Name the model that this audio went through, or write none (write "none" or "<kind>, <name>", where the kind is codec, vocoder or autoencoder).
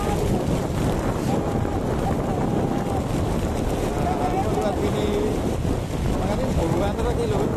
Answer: none